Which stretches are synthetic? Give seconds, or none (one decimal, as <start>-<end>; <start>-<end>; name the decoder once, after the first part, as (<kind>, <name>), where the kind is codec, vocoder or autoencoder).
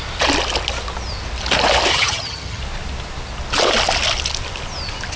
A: 1.9-2.6 (vocoder, HiFi-GAN)